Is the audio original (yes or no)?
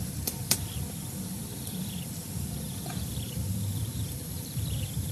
no